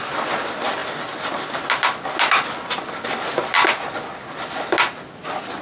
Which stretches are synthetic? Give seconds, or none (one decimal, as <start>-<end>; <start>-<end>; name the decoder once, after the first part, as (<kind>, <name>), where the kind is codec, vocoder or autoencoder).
none